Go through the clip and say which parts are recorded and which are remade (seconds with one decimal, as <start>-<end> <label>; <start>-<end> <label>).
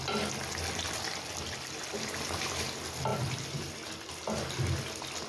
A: 0.0-5.3 recorded